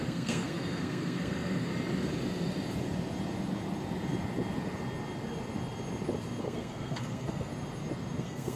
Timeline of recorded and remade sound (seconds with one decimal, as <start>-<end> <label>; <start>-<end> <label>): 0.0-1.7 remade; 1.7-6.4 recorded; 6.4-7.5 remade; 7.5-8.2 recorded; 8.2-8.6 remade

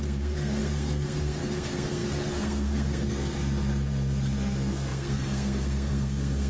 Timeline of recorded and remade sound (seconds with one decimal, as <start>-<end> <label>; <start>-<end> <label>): 0.0-6.5 remade

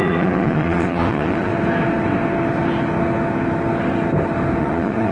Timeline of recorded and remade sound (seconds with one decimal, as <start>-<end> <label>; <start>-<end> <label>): 0.0-1.5 remade; 1.5-4.6 recorded; 4.6-5.1 remade

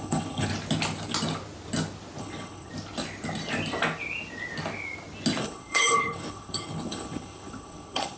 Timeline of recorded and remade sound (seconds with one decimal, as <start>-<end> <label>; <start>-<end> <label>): 0.0-0.5 remade; 0.5-2.2 recorded; 2.2-2.7 remade; 2.7-5.4 recorded; 5.4-8.2 remade

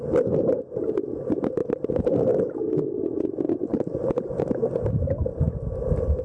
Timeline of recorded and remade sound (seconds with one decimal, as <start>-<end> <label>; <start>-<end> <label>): 0.0-6.2 recorded

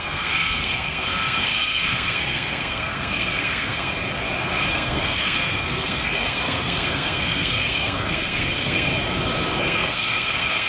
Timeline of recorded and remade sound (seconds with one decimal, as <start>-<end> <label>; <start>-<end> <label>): 0.0-3.9 remade; 3.9-4.7 recorded; 4.7-8.9 remade; 8.9-9.6 recorded; 9.6-10.7 remade

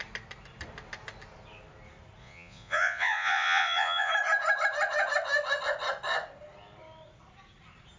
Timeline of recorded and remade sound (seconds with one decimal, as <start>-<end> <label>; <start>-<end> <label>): 0.0-2.2 recorded; 2.2-4.1 remade; 4.1-8.0 recorded

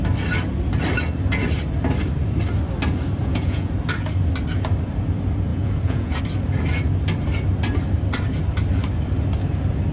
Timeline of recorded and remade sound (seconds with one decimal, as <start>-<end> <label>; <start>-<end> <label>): 0.0-3.2 recorded; 3.2-3.7 remade; 3.7-5.5 recorded; 5.5-6.2 remade; 6.2-9.9 recorded